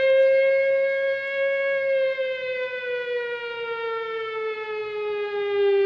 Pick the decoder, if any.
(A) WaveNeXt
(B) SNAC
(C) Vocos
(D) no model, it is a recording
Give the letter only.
D